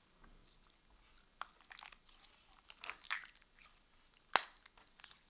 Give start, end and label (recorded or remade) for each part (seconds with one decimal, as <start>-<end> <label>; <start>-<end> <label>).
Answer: 0.0-5.3 recorded